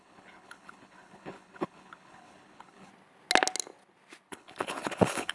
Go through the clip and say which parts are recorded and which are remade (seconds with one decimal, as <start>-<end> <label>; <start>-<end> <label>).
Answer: 0.0-2.9 remade; 2.9-4.3 recorded; 4.3-5.3 remade